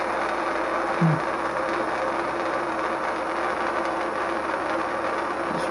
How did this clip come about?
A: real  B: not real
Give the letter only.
A